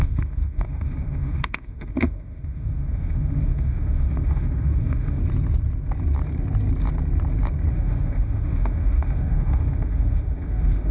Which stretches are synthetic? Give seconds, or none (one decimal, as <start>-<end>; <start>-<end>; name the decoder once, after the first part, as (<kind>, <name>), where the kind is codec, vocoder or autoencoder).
0.0-5.2 (autoencoder, DAC-VAE); 7.7-10.9

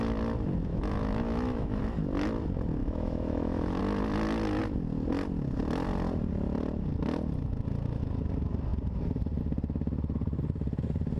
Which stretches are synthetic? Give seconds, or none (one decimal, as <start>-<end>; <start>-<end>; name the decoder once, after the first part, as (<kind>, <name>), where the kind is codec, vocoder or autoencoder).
0.7-1.8 (autoencoder, DAC-VAE); 2.8-3.8

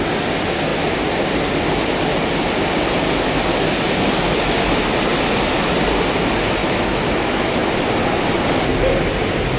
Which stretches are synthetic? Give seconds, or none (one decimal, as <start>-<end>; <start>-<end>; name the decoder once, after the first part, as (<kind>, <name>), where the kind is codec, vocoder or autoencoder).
6.6-7.7 (autoencoder, DAC-VAE)

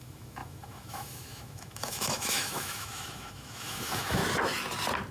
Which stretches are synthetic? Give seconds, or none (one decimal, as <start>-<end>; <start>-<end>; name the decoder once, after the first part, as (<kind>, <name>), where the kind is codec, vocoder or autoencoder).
0.0-4.2 (autoencoder, DAC-VAE)

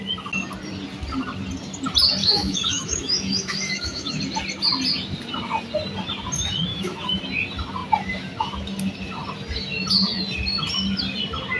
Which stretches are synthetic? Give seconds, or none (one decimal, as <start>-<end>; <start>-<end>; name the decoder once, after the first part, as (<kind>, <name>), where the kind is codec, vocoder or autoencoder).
2.2-4.2 (autoencoder, DAC-VAE); 6.7-7.2

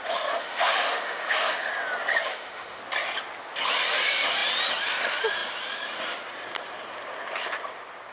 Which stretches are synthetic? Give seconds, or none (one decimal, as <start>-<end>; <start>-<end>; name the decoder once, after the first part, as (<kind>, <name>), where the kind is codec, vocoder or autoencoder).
0.4-1.7 (autoencoder, DAC-VAE); 2.3-2.8